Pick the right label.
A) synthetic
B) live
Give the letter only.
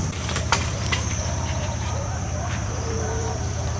A